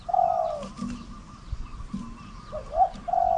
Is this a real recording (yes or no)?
yes